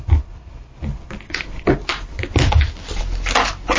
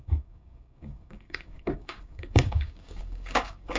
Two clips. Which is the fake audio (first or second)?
second